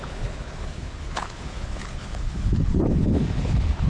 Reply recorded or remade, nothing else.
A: remade